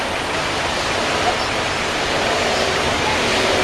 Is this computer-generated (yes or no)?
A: yes